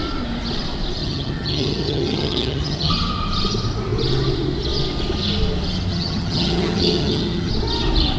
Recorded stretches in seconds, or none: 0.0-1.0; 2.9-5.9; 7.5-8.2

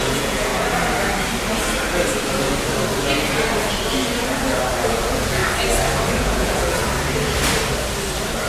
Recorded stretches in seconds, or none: 0.5-4.9; 5.4-6.2; 6.8-8.5